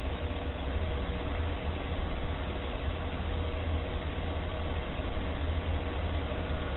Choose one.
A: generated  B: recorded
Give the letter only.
B